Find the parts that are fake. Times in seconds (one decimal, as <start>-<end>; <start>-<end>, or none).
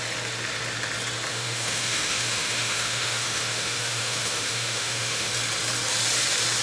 1.3-5.3